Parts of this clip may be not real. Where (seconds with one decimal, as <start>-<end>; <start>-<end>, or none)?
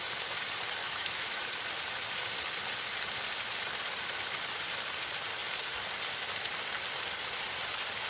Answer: 0.8-1.5